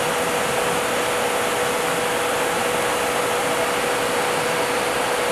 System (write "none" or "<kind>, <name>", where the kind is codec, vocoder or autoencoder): none